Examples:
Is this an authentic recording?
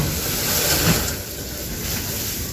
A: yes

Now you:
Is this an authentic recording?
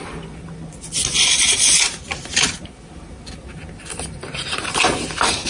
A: yes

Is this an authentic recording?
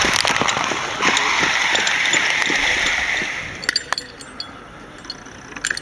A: yes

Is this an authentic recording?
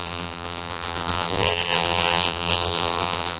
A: no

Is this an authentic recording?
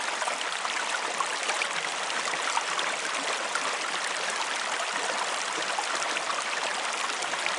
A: yes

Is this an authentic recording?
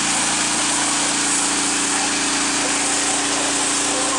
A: yes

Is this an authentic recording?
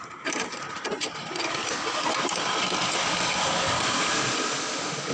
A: yes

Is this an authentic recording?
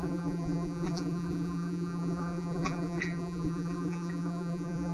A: no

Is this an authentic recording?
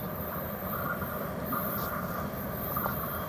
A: no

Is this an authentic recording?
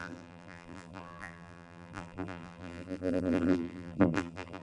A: no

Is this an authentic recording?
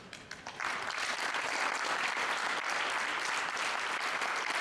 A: no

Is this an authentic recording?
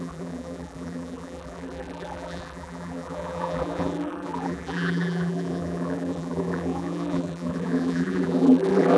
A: no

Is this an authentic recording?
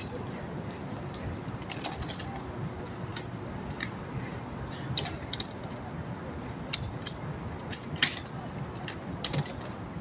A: yes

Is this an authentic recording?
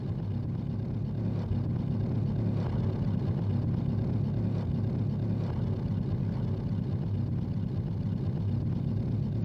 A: yes